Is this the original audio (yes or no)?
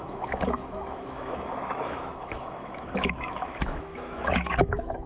no